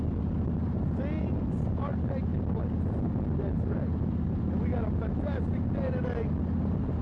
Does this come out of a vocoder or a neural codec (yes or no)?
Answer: no